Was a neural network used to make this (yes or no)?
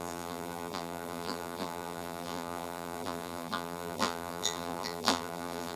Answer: yes